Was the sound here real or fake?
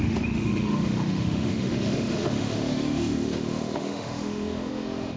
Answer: fake